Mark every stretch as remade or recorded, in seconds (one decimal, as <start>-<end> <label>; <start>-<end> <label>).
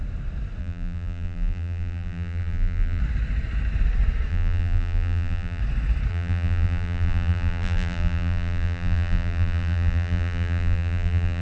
0.0-0.6 recorded; 0.6-3.0 remade; 3.0-4.3 recorded; 4.3-5.6 remade; 5.6-6.1 recorded; 6.1-11.4 remade